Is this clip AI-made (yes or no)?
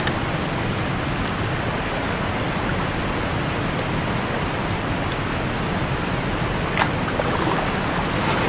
no